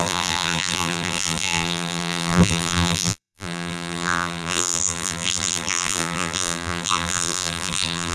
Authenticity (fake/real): fake